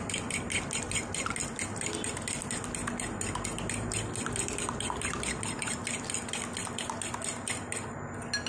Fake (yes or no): no